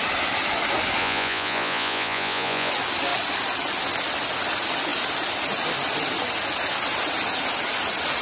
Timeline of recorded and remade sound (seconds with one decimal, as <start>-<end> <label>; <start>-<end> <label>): 0.0-1.0 recorded; 1.0-2.7 remade; 2.7-8.2 recorded